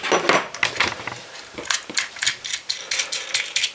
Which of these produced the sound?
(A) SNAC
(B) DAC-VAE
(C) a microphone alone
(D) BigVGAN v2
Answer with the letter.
C